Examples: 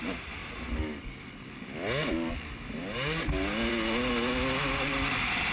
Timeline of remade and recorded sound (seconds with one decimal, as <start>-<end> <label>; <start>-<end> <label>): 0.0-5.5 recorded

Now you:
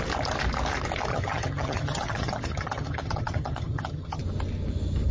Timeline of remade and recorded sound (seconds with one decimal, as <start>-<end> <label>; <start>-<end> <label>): 0.0-1.1 recorded; 1.1-4.2 remade; 4.2-5.1 recorded

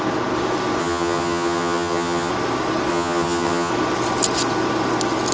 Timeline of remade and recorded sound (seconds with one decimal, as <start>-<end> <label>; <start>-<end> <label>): 0.0-0.8 recorded; 0.8-2.3 remade; 2.3-2.9 recorded; 2.9-3.7 remade; 3.7-5.3 recorded

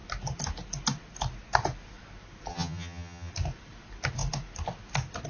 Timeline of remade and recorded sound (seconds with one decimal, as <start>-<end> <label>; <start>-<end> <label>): 0.0-2.5 recorded; 2.5-3.3 remade; 3.3-5.3 recorded

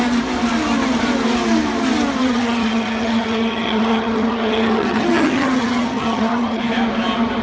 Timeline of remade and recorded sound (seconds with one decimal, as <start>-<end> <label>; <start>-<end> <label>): 0.0-2.2 recorded; 2.2-6.6 remade; 6.6-7.4 recorded

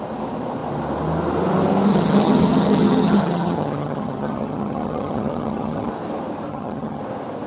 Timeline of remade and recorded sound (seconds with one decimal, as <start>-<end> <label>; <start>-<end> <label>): 0.0-1.9 recorded; 1.9-5.9 remade; 5.9-6.5 recorded; 6.5-7.0 remade; 7.0-7.5 recorded

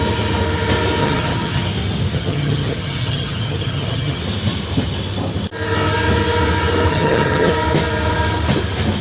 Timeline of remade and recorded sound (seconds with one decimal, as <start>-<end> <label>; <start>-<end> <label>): 0.0-1.0 recorded; 1.0-1.7 remade; 1.7-2.1 recorded; 2.1-4.2 remade; 4.2-6.9 recorded; 6.9-7.5 remade; 7.5-9.0 recorded